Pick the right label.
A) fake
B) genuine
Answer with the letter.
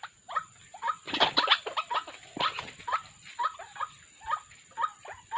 B